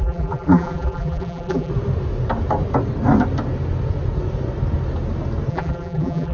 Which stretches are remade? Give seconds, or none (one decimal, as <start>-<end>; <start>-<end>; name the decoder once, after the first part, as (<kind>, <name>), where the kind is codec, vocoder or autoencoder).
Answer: 0.0-1.7 (vocoder, BigVGAN v2); 5.5-6.3